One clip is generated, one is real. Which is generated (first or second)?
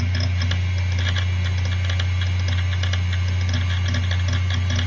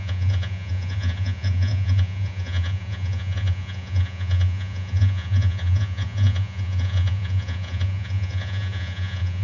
second